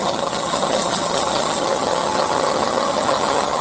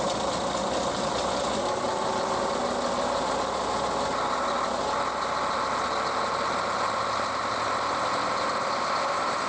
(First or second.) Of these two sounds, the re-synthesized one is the first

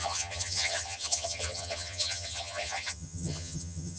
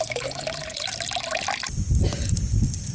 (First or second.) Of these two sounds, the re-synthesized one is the first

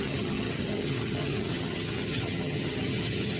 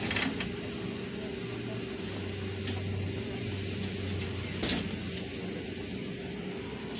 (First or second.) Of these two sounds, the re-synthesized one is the first